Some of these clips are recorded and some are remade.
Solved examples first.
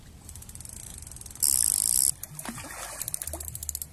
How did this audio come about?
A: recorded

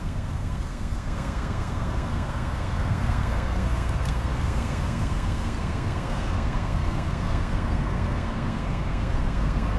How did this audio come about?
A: remade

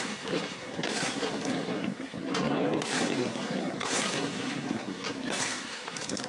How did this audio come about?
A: remade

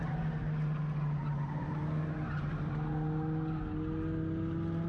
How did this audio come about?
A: recorded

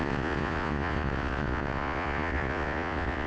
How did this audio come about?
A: remade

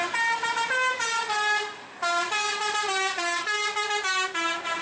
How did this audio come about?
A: recorded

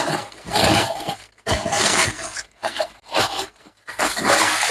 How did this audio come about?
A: remade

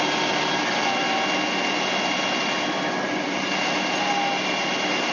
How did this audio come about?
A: recorded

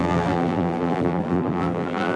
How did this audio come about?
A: remade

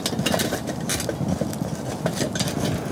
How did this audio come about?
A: recorded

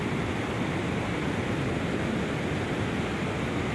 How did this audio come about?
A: recorded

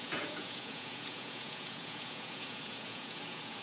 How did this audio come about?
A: remade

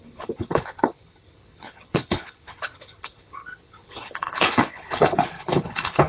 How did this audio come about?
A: remade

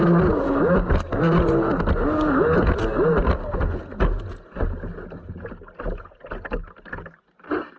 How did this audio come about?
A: recorded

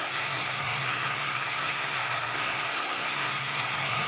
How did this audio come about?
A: remade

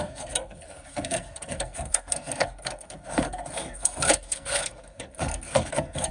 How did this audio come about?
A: remade